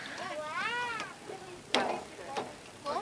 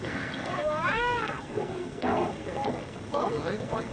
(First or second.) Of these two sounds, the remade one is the second